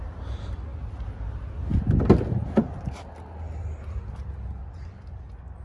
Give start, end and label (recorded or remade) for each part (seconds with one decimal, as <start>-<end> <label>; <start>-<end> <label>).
0.0-5.6 recorded